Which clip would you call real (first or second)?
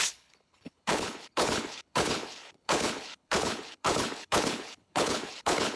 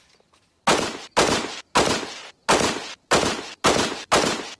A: second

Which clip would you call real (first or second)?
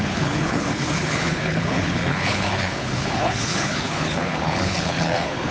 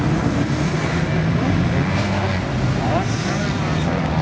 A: second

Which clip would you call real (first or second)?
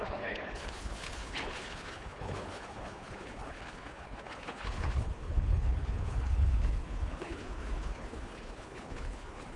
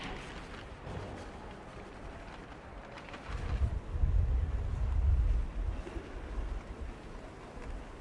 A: second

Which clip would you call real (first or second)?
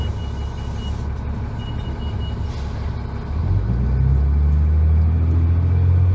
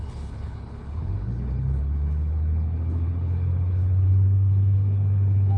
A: first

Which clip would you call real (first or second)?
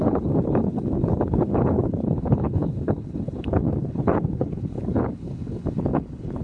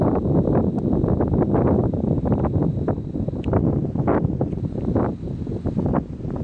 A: second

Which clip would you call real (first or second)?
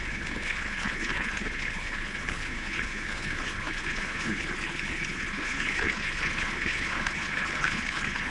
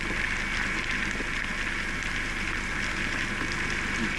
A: second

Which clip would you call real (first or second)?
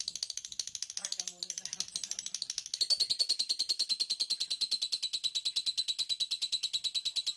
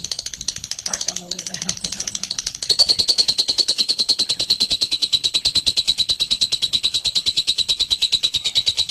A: first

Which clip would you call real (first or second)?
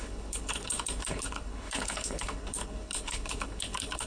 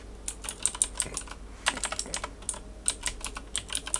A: second